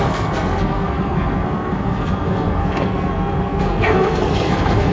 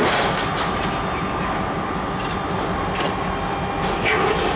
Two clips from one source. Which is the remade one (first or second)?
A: first